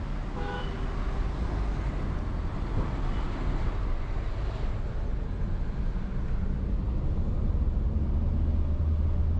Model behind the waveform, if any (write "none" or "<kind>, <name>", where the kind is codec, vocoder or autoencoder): none